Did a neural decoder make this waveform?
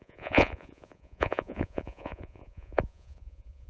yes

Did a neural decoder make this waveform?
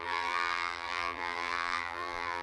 yes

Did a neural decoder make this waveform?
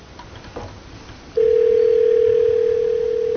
no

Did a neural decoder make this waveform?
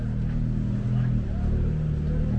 no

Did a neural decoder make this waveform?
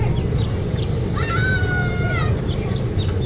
no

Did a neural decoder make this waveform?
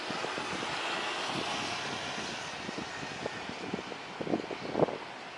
no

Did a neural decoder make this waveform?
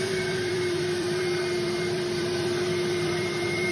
yes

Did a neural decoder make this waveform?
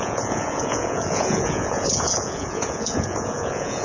yes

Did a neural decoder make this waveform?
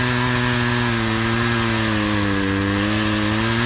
no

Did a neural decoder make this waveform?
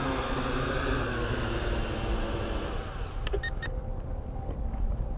no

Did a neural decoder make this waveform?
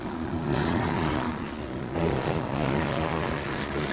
yes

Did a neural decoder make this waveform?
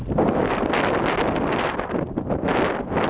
no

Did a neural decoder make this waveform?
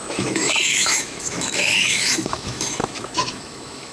yes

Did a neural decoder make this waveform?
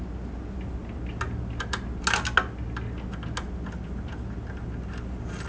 no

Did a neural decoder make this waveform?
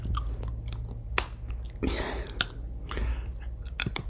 no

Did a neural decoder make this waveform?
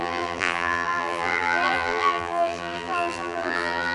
yes